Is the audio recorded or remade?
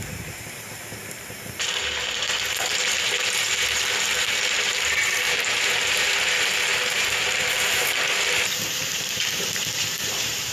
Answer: remade